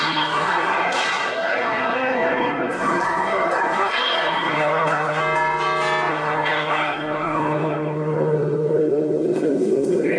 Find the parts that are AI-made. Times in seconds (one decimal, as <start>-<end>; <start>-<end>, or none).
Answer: 0.0-5.2; 6.1-10.2